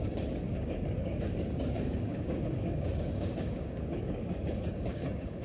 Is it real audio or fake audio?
fake